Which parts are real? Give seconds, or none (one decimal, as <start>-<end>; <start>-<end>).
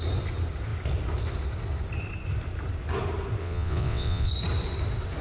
0.0-3.4; 4.3-5.2